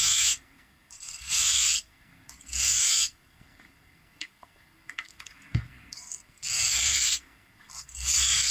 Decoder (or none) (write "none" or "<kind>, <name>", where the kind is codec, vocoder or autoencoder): codec, SNAC